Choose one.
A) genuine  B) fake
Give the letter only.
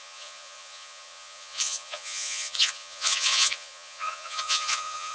B